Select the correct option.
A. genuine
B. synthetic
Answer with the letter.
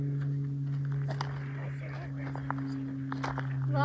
A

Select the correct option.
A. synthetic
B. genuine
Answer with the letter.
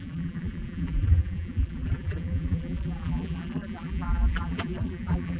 A